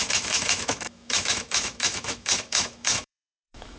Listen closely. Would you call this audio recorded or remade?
remade